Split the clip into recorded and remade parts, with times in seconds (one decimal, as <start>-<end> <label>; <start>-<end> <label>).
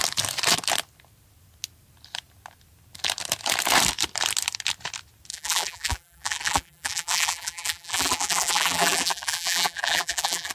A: 0.0-5.3 recorded; 5.3-10.5 remade